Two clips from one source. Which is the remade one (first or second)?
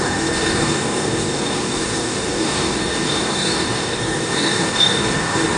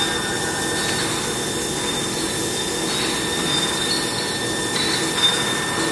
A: first